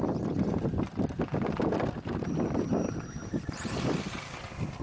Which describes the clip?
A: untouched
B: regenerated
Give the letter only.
A